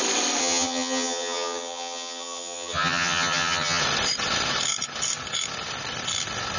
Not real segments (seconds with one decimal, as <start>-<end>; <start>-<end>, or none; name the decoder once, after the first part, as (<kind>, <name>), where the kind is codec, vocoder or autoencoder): 0.4-3.8 (vocoder, HiFi-GAN)

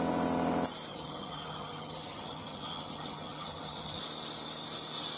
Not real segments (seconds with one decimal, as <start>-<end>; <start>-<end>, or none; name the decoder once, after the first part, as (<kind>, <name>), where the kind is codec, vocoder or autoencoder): 0.9-4.0 (vocoder, HiFi-GAN)